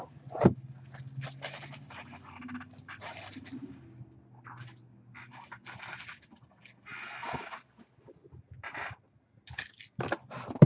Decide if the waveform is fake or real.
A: real